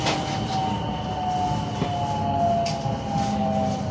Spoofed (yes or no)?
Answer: no